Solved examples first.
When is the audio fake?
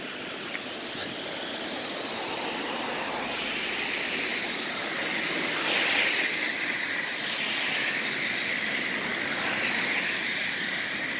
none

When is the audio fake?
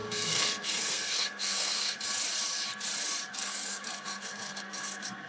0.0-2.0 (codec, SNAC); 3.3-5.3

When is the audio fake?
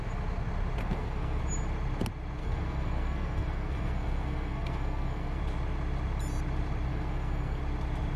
0.8-1.4 (codec, SNAC); 2.4-5.4; 6.9-7.6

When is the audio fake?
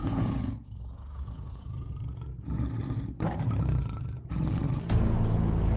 0.0-2.3 (vocoder, Vocos)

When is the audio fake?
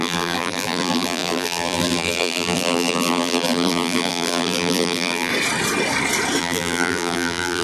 0.0-5.3 (vocoder, BigVGAN v2); 6.4-7.6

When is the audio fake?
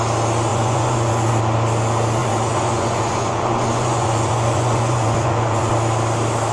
0.5-1.4 (vocoder, Vocos); 2.2-5.7